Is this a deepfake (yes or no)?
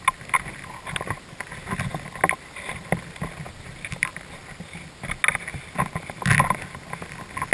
no